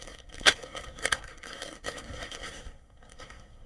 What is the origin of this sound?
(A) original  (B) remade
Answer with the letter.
B